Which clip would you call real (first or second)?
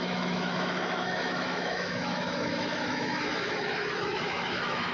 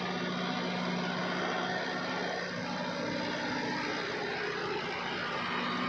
second